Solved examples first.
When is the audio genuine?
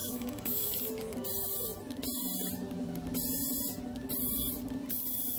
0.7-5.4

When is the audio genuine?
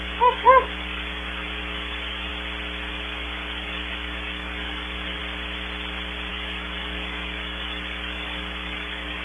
2.3-2.9; 5.2-6.3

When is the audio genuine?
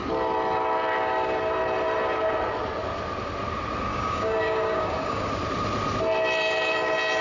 0.0-3.9; 5.3-7.2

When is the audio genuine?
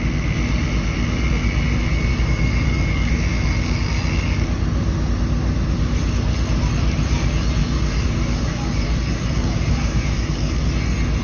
0.0-2.1; 3.1-7.6; 10.6-11.2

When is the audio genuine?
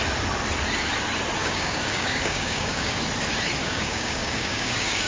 0.0-1.4; 3.0-3.6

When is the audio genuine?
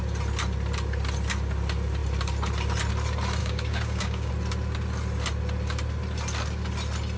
0.0-3.4; 4.3-7.2